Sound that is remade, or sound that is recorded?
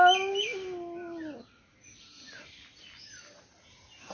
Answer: recorded